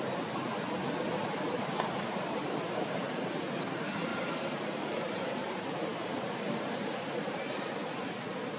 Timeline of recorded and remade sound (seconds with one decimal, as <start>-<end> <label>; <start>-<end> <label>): 0.0-1.2 recorded; 1.2-3.0 remade; 3.0-4.1 recorded; 4.1-5.1 remade; 5.1-8.6 recorded